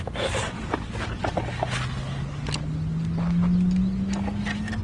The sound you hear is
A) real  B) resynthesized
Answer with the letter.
A